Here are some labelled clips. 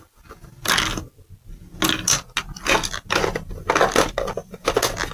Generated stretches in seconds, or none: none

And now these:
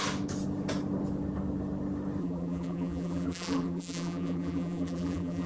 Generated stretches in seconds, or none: 2.2-5.5 (vocoder, BigVGAN v2)

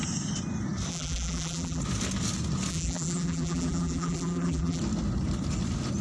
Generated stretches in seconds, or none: 0.9-1.8 (vocoder, BigVGAN v2); 2.7-4.8

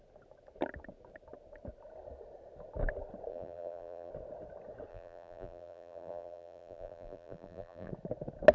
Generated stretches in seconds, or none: 3.3-4.1 (vocoder, BigVGAN v2); 4.9-7.9

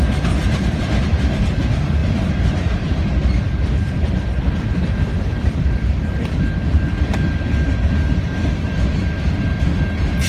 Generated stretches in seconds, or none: 0.4-1.6 (vocoder, BigVGAN v2); 2.0-3.1